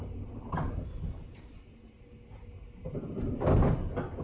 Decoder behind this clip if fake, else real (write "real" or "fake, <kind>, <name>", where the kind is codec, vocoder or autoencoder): real